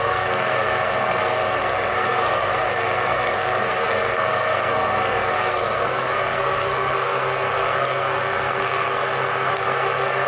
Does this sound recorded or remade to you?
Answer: remade